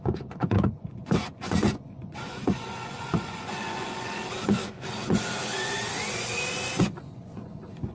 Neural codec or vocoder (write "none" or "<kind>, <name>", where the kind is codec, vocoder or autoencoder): vocoder, Vocos